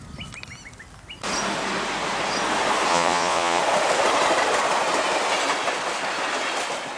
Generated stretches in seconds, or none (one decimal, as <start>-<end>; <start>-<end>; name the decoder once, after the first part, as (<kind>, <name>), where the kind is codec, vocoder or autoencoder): 2.9-3.6 (vocoder, Vocos)